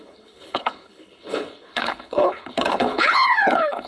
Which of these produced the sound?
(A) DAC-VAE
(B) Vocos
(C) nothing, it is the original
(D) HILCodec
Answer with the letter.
D